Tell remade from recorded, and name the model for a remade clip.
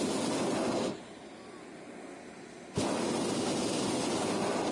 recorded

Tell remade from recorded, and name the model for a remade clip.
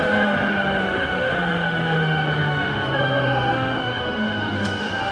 remade, autoencoder, DAC-VAE